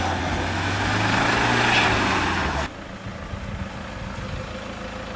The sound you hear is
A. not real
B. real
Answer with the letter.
B